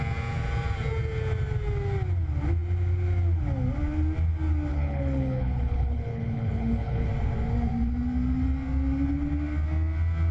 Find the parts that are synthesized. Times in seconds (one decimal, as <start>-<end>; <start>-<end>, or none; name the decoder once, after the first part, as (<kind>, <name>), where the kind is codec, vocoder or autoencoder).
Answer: 4.7-7.1 (codec, HILCodec)